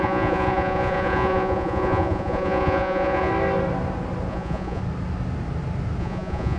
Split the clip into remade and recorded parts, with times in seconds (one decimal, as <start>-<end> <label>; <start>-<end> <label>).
0.0-3.3 remade; 3.3-4.3 recorded; 4.3-4.8 remade; 4.8-6.0 recorded; 6.0-6.6 remade